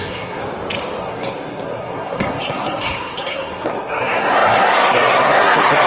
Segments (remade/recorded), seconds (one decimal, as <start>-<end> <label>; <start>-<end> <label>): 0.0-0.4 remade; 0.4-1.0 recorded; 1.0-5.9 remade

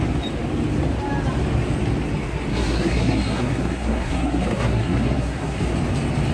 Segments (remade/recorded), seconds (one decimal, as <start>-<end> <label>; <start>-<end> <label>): 0.0-2.5 recorded; 2.5-5.6 remade; 5.6-6.3 recorded

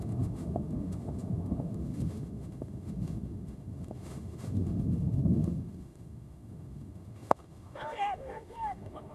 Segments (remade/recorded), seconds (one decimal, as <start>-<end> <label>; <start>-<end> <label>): 0.0-9.1 remade

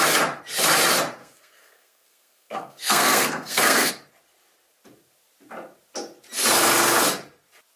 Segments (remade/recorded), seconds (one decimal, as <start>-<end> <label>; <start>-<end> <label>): 0.0-1.2 recorded; 1.2-3.9 remade; 3.9-7.8 recorded

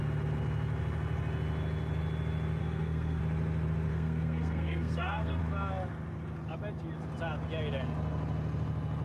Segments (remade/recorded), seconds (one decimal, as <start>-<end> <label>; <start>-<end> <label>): 0.0-2.6 recorded; 2.6-3.2 remade; 3.2-3.9 recorded; 3.9-5.4 remade; 5.4-9.0 recorded

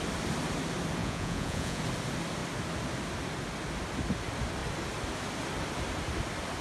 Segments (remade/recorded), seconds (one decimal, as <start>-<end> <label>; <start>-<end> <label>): 0.0-1.0 recorded; 1.0-1.8 remade; 1.8-6.6 recorded